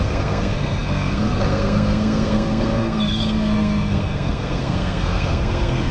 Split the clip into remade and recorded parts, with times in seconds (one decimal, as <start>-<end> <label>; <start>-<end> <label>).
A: 0.0-5.9 remade